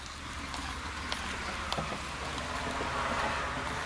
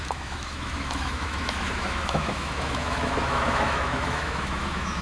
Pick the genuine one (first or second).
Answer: first